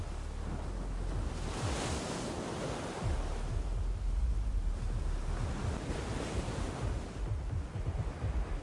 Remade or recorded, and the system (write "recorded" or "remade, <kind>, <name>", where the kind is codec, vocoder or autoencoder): recorded